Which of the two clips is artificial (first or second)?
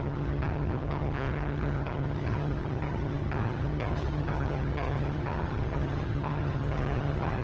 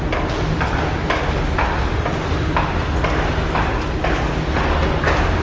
first